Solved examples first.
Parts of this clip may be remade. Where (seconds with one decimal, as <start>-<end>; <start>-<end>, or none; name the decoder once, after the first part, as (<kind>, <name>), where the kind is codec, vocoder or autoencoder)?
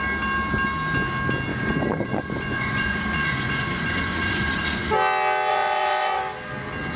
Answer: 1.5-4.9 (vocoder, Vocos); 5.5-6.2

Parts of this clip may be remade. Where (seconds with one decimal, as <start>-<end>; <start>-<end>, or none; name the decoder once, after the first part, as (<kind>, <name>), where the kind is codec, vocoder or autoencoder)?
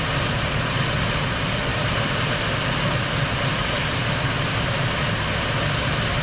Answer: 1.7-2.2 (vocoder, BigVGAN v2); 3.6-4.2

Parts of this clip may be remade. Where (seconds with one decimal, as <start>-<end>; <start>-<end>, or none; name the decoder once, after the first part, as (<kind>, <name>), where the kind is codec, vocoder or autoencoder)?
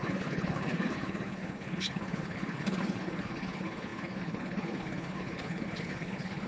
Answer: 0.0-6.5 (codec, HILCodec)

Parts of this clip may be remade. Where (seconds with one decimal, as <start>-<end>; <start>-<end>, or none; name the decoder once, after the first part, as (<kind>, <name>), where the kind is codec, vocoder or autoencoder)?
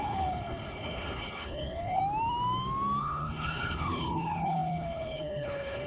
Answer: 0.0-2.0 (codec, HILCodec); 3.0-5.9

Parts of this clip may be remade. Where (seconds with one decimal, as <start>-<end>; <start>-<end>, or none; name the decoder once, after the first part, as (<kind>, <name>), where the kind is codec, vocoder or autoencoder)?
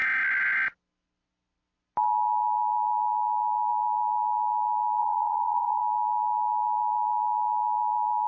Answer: 5.0-5.8 (vocoder, Vocos)